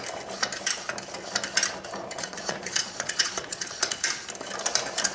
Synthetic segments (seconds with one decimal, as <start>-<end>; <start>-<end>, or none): 2.2-4.0